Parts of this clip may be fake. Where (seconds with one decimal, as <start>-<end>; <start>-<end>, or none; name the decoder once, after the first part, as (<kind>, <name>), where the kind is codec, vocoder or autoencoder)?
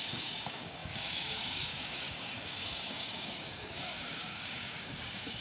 0.0-5.4 (codec, DAC)